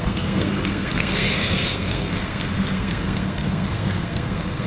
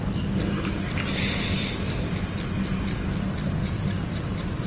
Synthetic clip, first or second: first